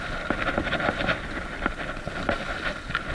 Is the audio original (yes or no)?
yes